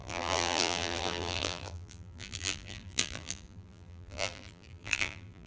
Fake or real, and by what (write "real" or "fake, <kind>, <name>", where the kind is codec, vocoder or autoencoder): fake, vocoder, BigVGAN v2